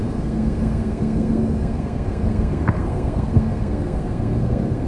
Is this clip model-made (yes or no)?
yes